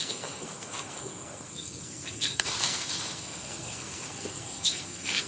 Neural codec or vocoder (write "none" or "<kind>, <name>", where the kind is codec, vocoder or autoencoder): codec, SNAC